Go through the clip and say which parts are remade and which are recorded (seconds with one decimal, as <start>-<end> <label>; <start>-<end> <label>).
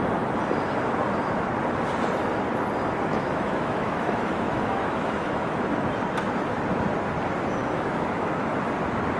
0.0-3.1 recorded; 3.1-5.6 remade; 5.6-7.6 recorded; 7.6-8.5 remade; 8.5-9.2 recorded